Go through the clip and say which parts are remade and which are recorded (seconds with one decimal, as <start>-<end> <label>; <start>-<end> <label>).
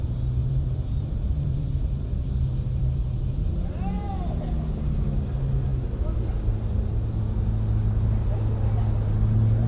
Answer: 0.0-0.4 recorded; 0.4-3.5 remade; 3.5-9.7 recorded